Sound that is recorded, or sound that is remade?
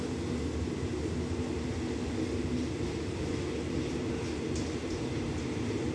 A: recorded